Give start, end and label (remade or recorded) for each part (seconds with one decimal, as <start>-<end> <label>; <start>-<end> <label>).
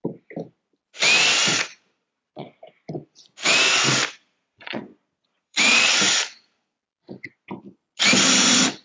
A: 0.0-1.4 recorded; 1.4-2.5 remade; 2.5-4.1 recorded; 4.1-6.0 remade; 6.0-8.8 recorded